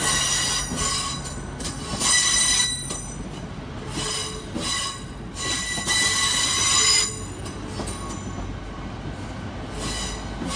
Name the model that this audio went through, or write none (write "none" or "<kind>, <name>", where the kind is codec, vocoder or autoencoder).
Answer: none